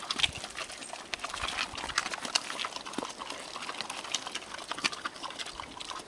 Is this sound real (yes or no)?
yes